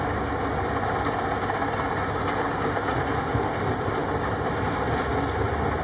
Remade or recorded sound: recorded